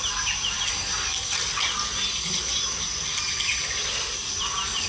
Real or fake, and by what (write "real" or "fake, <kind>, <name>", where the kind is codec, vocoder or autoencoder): real